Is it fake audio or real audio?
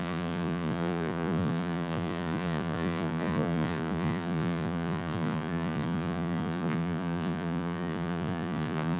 fake